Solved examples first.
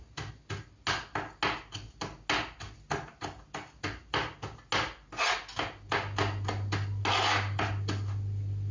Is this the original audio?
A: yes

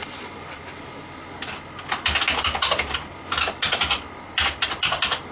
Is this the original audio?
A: yes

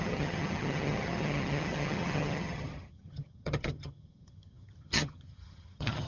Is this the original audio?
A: no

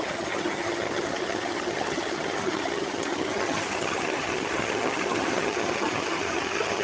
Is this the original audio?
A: no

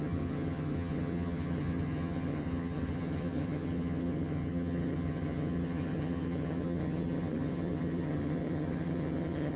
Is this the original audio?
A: no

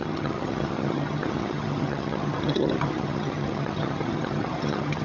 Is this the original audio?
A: no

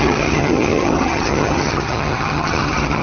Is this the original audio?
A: no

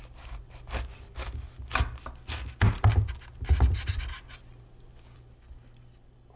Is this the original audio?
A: yes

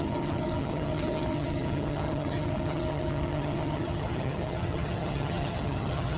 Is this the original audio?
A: no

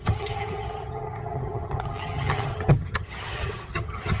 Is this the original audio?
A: no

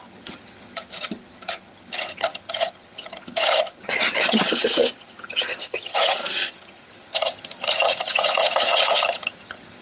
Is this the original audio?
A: no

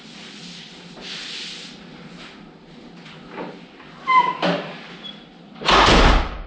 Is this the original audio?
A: yes